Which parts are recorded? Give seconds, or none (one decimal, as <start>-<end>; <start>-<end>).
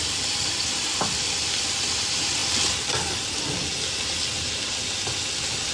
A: 0.0-5.7